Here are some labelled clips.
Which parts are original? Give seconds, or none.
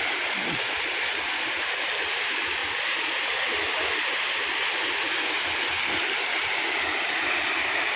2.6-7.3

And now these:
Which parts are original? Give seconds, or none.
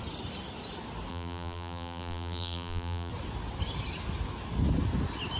0.0-1.1; 3.1-5.4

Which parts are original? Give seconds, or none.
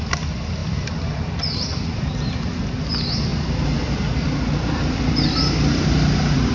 0.0-0.6; 2.0-3.3